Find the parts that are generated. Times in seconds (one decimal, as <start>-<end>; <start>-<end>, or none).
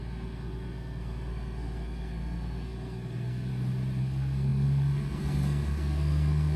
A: 0.0-3.5; 4.0-6.6